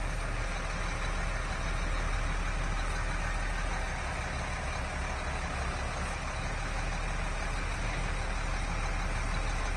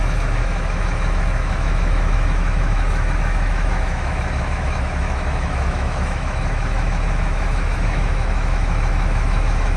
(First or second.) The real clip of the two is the first